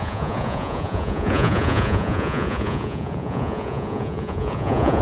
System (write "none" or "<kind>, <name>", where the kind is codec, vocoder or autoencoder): vocoder, Vocos